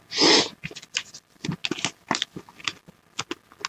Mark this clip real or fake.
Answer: real